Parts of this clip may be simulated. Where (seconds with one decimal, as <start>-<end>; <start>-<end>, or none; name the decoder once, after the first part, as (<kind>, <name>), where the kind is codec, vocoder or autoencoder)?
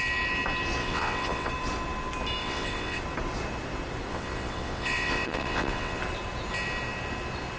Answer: 0.8-1.5 (vocoder, WaveNeXt); 2.4-3.0; 4.1-6.0